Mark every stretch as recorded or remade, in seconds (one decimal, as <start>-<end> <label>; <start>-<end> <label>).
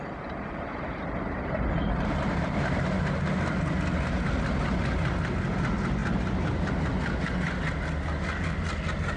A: 0.0-3.0 remade; 3.0-9.2 recorded